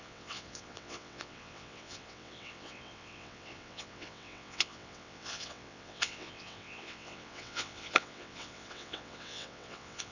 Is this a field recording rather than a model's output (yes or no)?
no